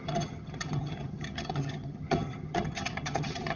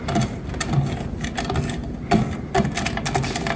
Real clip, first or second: second